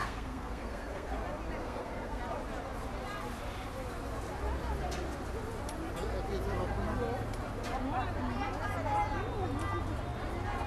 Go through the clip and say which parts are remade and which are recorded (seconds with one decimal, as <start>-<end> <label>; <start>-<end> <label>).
0.0-1.1 remade; 1.1-1.6 recorded; 1.6-2.2 remade; 2.2-10.7 recorded